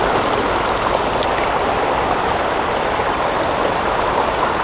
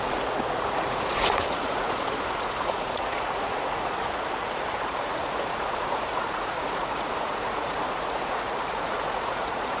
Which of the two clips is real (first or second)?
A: first